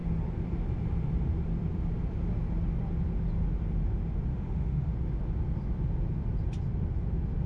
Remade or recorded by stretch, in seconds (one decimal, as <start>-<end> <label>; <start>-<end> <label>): 0.0-4.3 recorded; 4.3-4.9 remade; 4.9-7.5 recorded